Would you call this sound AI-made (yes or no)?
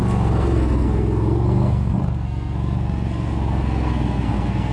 yes